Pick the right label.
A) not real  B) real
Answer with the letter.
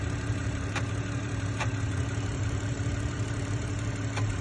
A